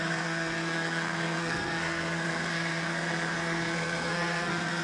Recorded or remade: remade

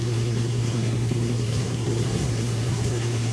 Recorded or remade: remade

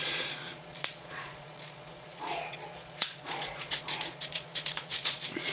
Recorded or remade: remade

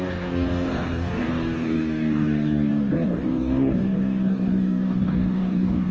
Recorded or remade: remade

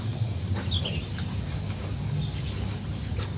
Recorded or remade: recorded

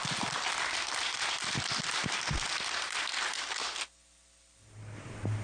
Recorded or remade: recorded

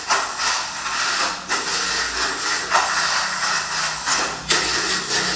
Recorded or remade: recorded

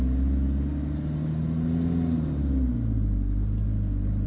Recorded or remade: recorded